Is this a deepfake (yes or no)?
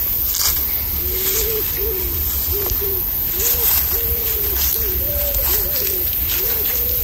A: yes